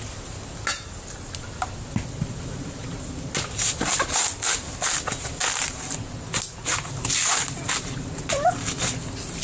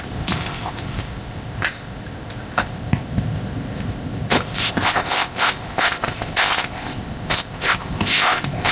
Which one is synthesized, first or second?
second